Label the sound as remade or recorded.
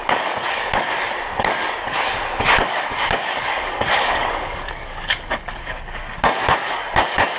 remade